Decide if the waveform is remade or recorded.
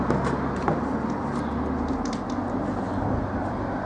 recorded